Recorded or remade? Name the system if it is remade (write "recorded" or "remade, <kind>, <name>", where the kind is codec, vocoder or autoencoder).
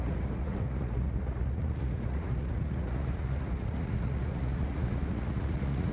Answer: remade, vocoder, Vocos